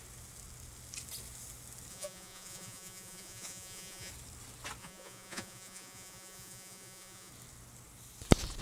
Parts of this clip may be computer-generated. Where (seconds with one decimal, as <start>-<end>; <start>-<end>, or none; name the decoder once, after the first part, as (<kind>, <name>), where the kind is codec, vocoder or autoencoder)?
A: 1.9-4.1 (vocoder, Vocos); 4.8-7.3